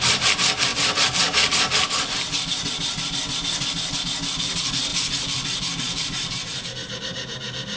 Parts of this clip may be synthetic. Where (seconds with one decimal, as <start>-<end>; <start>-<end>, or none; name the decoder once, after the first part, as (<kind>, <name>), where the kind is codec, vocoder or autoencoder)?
4.9-6.7 (vocoder, BigVGAN v2)